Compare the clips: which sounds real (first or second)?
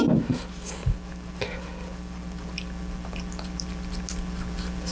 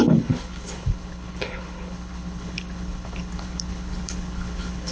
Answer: first